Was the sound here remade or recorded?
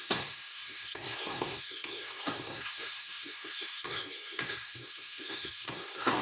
remade